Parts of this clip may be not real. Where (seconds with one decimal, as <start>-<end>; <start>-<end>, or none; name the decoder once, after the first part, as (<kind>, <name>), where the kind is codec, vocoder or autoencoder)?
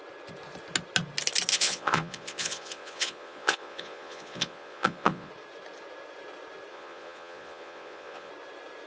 1.5-5.3 (vocoder, Vocos); 6.7-8.3